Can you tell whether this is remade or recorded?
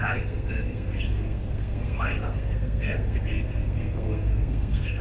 remade